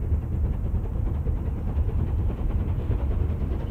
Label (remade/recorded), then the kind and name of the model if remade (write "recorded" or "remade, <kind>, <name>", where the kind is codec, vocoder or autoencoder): recorded